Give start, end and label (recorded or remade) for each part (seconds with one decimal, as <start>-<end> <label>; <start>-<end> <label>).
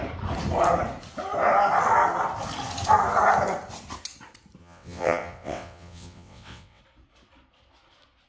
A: 0.0-4.6 recorded; 4.6-6.8 remade; 6.8-8.3 recorded